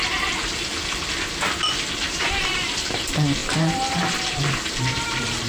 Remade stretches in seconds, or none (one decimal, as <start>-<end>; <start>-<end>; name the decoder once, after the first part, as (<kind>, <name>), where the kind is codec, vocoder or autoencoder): 2.2-5.5 (vocoder, BigVGAN v2)